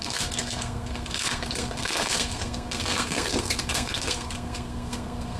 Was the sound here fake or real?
fake